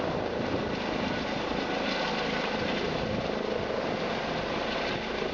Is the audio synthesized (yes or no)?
no